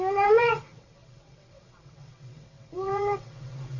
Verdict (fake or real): fake